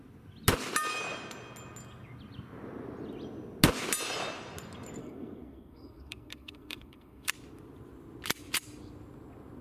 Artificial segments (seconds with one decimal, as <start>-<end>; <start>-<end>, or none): 5.0-7.3